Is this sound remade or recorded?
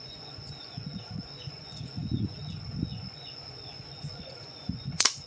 remade